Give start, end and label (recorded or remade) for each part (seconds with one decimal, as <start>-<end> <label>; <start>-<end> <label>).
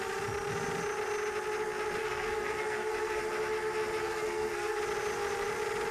0.0-2.0 recorded; 2.0-3.2 remade; 3.2-4.0 recorded; 4.0-4.8 remade; 4.8-5.9 recorded